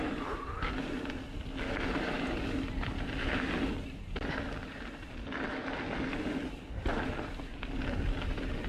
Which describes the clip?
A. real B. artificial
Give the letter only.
A